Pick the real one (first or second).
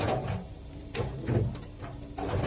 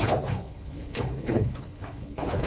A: first